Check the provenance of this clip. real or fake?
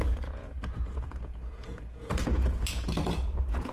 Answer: fake